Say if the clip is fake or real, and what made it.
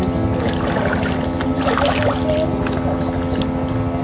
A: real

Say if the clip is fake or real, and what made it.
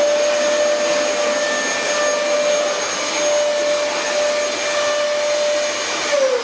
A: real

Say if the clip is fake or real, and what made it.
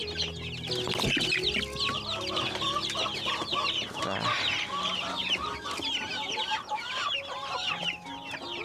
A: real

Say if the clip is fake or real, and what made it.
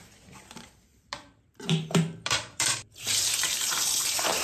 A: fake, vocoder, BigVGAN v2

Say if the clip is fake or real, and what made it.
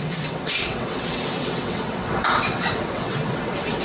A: fake, vocoder, WaveNeXt